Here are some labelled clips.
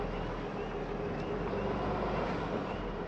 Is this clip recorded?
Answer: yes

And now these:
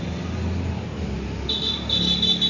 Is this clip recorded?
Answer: yes